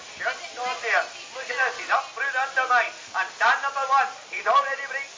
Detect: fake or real real